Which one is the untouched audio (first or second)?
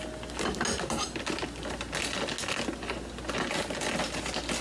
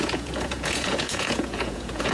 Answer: first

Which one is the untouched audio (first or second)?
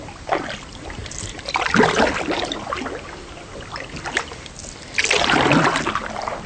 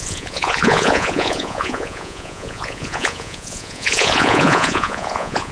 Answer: first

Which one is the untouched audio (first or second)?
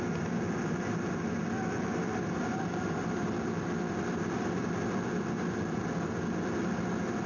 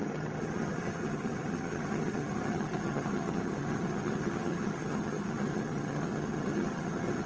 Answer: first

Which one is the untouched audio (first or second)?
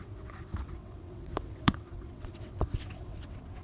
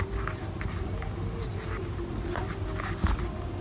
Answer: second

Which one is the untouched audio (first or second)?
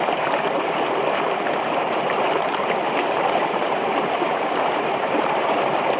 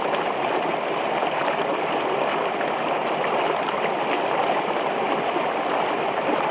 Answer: second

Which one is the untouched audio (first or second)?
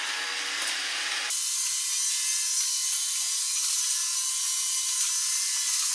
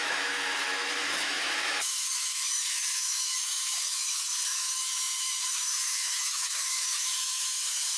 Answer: first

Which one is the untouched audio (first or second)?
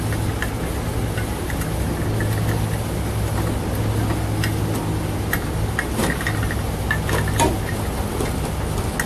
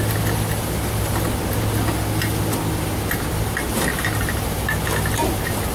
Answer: first